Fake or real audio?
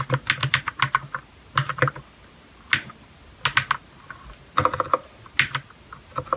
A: real